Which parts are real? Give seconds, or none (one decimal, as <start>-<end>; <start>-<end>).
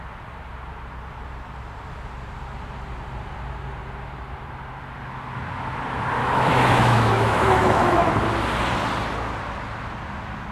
0.0-6.2; 8.1-10.5